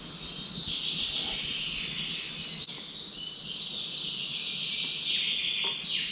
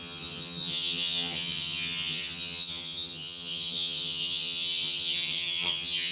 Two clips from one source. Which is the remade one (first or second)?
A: second